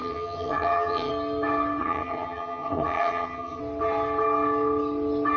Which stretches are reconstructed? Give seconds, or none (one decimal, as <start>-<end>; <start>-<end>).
0.0-1.1; 1.8-3.6